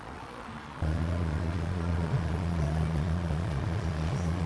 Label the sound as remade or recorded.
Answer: remade